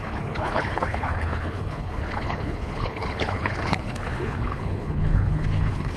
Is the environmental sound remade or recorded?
remade